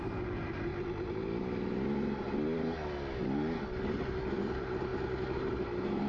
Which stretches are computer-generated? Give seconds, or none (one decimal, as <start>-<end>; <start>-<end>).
0.0-0.7; 4.4-4.9; 5.4-6.1